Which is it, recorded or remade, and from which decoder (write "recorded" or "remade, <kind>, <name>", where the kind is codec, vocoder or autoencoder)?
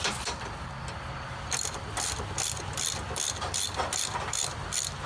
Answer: remade, vocoder, BigVGAN v2